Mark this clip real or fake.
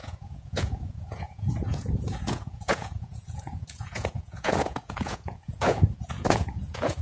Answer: fake